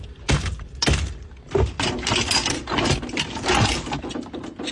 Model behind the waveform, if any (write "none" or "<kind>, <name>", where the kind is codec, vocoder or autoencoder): none